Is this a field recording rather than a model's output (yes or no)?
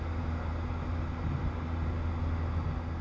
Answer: yes